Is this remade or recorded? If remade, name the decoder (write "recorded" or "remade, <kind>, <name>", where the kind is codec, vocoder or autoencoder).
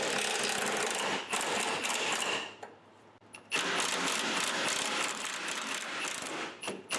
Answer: recorded